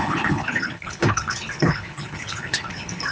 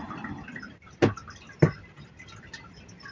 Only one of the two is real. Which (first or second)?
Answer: second